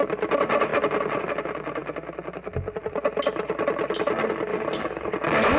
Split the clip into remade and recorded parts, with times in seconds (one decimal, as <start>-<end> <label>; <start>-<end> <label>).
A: 0.0-4.5 recorded; 4.5-5.1 remade; 5.1-5.6 recorded